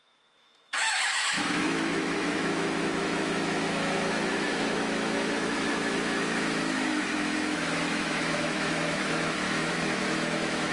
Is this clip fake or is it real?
fake